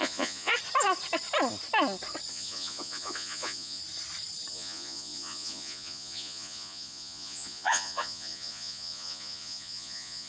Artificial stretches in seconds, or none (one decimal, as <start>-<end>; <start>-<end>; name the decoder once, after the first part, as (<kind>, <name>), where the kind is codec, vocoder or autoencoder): 0.0-0.5 (vocoder, Vocos); 2.3-3.8; 4.5-10.3